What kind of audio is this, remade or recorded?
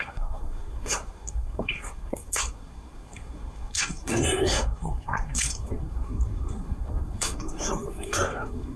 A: remade